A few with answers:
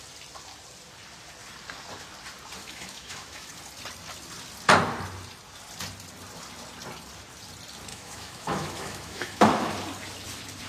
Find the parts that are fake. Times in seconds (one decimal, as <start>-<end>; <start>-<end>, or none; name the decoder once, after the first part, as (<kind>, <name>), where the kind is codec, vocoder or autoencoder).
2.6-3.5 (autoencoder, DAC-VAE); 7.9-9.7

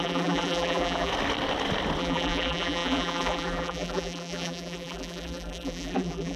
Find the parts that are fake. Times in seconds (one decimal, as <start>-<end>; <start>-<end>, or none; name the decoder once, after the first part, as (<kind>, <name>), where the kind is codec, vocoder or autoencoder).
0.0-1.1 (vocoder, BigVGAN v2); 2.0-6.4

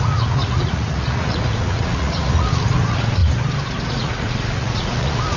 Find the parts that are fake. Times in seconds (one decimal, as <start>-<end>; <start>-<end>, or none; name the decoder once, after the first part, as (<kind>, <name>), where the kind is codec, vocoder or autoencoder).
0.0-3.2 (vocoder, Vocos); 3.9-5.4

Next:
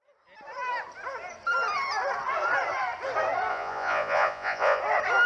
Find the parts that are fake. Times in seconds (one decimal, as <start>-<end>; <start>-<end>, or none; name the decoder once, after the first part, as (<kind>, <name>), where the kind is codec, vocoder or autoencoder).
3.5-4.8 (vocoder, Vocos)

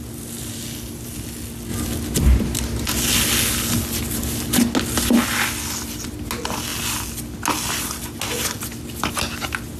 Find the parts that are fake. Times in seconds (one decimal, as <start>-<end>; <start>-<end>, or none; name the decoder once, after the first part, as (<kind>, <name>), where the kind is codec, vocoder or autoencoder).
none

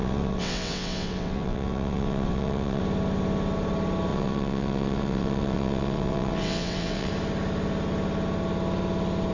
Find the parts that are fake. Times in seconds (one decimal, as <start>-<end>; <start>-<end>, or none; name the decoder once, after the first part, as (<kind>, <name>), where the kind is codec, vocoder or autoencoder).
0.0-2.8 (vocoder, WaveNeXt); 4.1-7.1